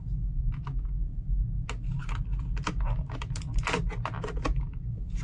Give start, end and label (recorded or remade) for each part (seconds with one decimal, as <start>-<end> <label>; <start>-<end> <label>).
0.0-5.2 recorded